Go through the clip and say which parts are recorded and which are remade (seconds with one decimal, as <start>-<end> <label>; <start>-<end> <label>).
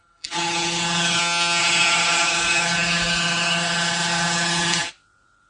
0.0-1.2 remade; 1.2-1.6 recorded; 1.6-4.9 remade; 4.9-5.5 recorded